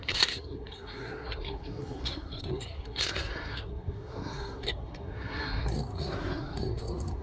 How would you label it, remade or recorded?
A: remade